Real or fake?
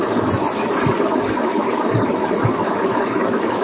fake